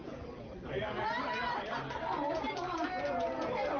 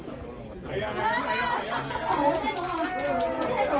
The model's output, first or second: first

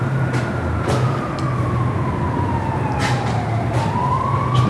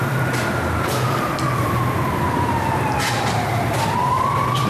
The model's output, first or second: second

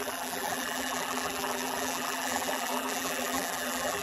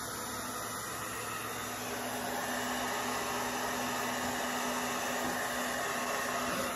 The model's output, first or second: first